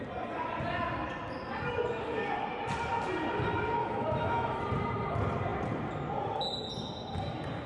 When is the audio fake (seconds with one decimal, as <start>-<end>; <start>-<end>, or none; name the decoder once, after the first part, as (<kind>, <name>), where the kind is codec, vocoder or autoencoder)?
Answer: 3.8-4.6 (autoencoder, DAC-VAE)